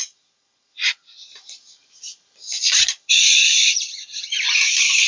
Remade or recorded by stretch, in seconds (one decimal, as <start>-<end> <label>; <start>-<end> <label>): 0.0-5.1 recorded